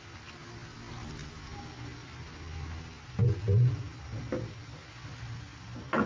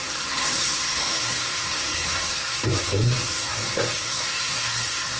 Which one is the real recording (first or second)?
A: first